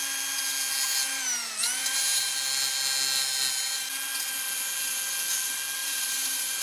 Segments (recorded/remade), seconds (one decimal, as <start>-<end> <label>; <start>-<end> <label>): 0.0-1.8 recorded; 1.8-2.3 remade; 2.3-5.8 recorded; 5.8-6.6 remade